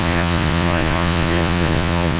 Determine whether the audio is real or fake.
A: fake